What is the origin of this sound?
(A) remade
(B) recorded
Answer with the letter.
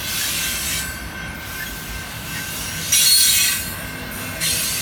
B